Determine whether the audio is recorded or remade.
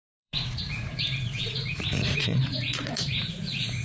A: remade